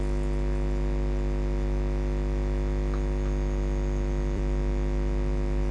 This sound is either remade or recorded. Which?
recorded